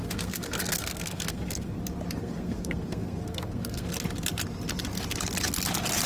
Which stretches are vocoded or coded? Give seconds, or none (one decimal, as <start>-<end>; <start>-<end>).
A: 0.0-1.8; 2.2-3.9